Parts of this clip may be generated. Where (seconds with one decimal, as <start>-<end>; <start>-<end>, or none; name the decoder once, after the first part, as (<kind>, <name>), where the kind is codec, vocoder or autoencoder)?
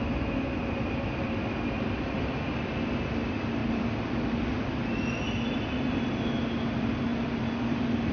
0.6-2.7 (vocoder, BigVGAN v2); 3.6-4.3; 7.1-8.1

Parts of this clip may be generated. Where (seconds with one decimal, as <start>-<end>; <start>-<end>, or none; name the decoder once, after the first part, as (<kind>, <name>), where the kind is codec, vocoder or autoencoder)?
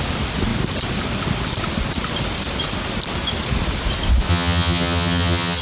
4.3-5.6 (vocoder, HiFi-GAN)